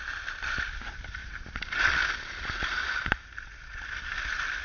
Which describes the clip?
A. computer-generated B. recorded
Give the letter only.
B